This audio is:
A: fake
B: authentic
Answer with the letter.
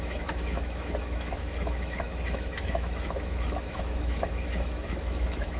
A